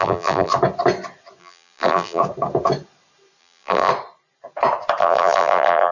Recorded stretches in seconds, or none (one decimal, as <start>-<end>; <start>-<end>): 0.5-1.4; 2.2-3.4; 3.9-5.0